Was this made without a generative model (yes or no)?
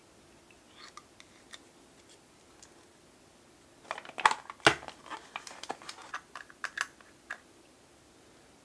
yes